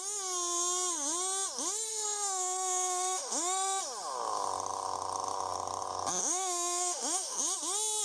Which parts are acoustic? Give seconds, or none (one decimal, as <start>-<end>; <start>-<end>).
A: 0.0-1.9; 3.8-6.2; 7.4-8.0